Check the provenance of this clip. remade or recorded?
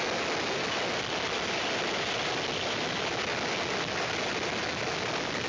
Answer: recorded